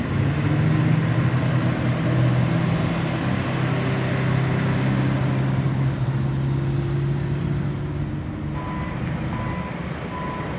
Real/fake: real